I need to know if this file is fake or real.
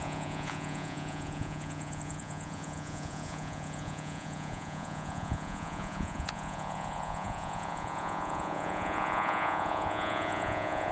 fake